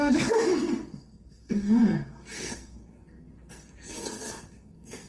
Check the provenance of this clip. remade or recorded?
remade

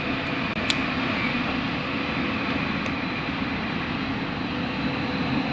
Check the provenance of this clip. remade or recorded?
recorded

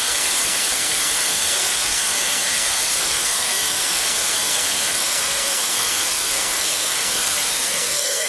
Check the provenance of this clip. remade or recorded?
remade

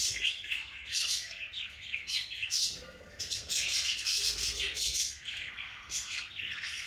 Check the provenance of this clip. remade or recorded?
remade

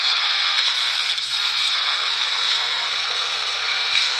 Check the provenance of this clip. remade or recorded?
remade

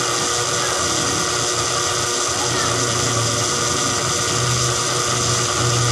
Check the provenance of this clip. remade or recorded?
recorded